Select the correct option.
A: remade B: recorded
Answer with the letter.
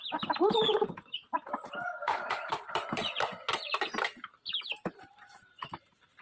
A